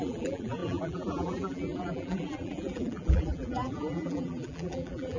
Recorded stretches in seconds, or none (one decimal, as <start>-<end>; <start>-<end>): none